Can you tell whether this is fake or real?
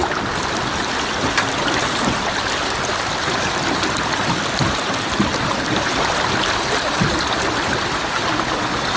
real